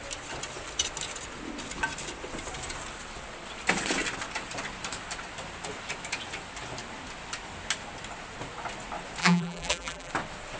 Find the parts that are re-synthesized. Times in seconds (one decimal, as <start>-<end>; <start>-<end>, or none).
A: 9.2-10.1